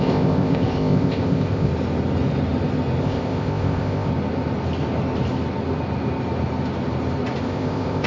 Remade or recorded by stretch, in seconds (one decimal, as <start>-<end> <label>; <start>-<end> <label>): 0.0-1.7 remade; 1.7-3.0 recorded; 3.0-4.1 remade; 4.1-7.4 recorded; 7.4-8.1 remade